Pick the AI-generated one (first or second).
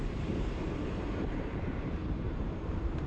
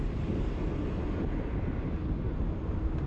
first